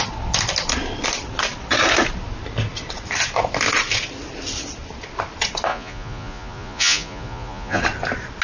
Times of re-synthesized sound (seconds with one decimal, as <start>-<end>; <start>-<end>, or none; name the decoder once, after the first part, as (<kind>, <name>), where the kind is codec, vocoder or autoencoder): 5.7-7.8 (vocoder, Vocos)